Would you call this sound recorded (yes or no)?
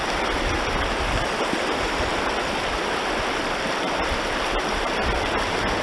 yes